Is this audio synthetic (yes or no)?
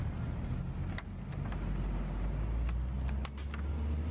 no